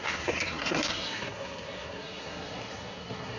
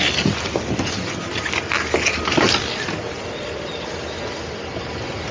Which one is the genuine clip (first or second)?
second